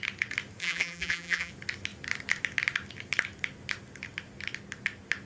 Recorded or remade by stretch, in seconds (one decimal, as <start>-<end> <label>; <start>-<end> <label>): 0.0-0.6 recorded; 0.6-1.5 remade; 1.5-5.3 recorded